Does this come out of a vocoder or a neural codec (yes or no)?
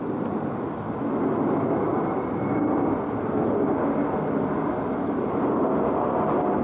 no